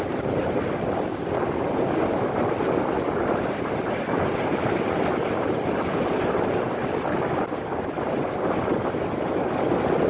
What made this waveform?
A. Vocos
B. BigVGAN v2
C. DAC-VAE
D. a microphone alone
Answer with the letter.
D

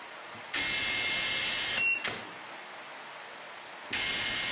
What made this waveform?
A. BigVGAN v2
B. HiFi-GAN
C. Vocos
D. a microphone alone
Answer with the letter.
D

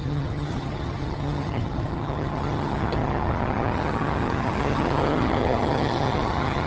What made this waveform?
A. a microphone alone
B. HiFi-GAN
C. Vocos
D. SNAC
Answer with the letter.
B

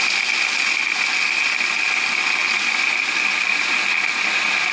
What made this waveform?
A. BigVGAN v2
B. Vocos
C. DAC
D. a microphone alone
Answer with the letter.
D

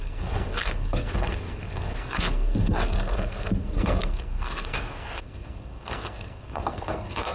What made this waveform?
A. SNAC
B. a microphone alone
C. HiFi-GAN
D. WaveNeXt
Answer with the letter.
A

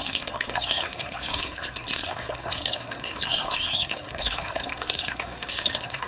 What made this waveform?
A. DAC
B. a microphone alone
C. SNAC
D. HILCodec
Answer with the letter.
C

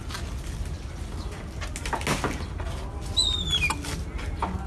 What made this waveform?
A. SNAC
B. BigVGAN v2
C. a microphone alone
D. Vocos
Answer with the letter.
C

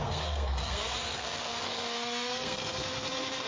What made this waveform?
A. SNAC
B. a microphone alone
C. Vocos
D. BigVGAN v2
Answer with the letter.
A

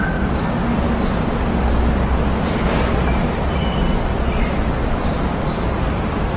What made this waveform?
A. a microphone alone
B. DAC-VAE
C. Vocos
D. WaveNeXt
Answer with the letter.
A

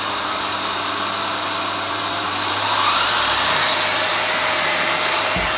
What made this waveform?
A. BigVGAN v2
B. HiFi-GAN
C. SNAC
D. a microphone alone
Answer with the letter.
A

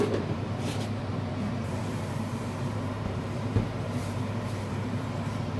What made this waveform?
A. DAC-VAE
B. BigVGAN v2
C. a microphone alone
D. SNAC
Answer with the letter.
B